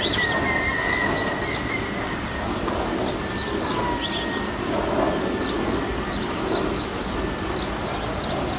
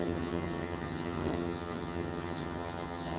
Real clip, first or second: first